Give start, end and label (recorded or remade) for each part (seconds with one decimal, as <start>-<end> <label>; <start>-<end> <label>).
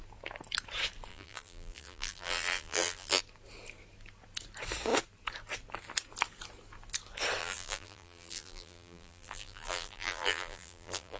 0.0-1.1 recorded; 1.1-3.2 remade; 3.2-7.4 recorded; 7.4-11.2 remade